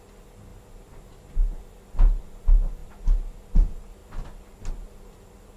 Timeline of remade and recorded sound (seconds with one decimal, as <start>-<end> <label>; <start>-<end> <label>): 0.0-5.6 recorded